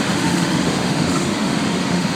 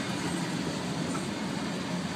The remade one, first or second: first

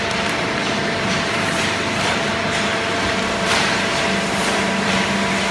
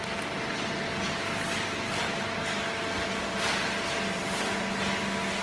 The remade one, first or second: first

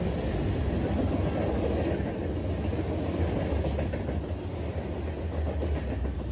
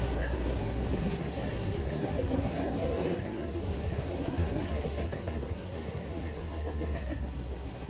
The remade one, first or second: second